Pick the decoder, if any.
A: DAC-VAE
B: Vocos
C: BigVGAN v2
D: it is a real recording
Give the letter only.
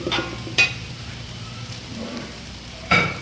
C